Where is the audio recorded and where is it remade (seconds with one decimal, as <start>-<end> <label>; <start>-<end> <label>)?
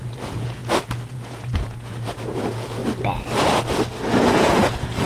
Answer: 0.0-0.6 remade; 0.6-1.1 recorded; 1.1-2.8 remade; 2.8-4.2 recorded; 4.2-5.1 remade